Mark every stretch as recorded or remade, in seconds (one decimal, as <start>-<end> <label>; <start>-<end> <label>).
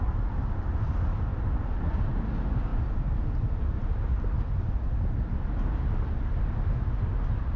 0.0-7.6 recorded